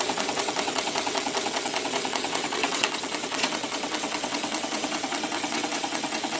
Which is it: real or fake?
fake